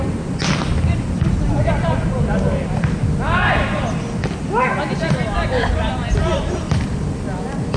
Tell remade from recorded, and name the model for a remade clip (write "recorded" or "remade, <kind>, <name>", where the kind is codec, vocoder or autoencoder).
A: remade, vocoder, BigVGAN v2